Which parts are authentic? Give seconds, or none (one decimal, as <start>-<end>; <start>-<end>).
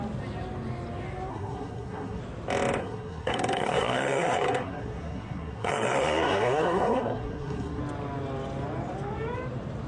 0.0-1.3; 2.2-2.8; 7.8-9.9